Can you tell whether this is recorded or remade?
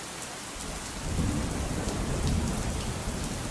remade